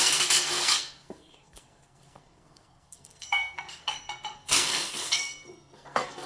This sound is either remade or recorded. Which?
remade